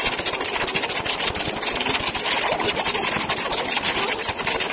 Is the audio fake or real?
real